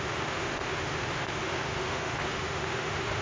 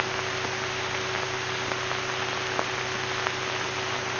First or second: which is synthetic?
first